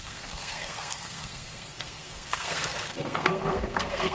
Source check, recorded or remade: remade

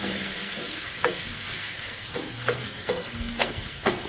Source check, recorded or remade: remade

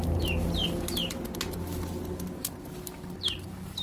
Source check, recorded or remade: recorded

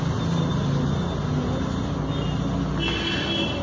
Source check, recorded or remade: recorded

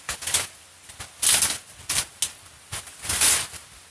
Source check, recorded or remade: recorded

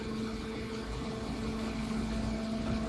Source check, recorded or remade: remade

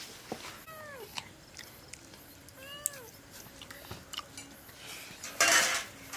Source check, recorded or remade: recorded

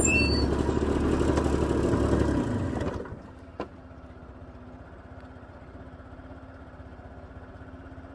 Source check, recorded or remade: recorded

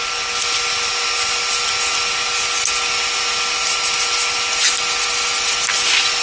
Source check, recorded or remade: recorded